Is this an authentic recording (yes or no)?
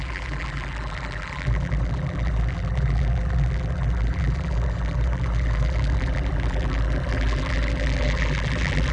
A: no